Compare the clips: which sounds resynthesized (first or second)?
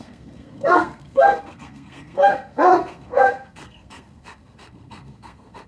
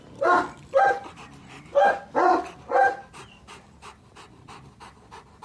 first